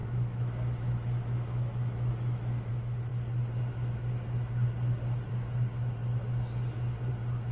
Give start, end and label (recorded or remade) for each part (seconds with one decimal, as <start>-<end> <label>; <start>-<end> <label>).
0.0-2.7 remade; 2.7-7.5 recorded